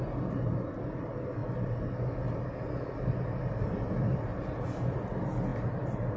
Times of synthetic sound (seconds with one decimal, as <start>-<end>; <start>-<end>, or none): none